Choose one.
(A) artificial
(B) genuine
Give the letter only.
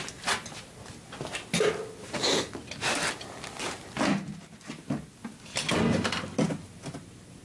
B